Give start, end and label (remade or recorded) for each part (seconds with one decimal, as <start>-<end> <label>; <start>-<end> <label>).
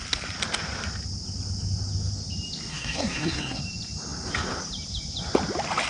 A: 0.0-2.7 recorded; 2.7-3.6 remade; 3.6-5.9 recorded